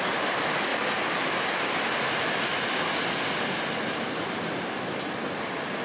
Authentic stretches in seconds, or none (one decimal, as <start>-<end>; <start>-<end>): 0.0-5.8